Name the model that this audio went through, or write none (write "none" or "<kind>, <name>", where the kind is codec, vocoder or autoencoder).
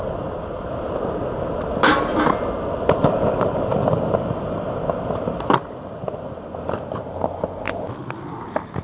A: none